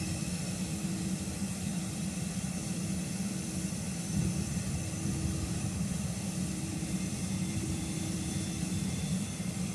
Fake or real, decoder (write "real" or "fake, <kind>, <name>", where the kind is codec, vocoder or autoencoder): fake, vocoder, BigVGAN v2